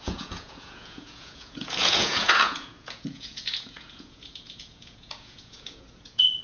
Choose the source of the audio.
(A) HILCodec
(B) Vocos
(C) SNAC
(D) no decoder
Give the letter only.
B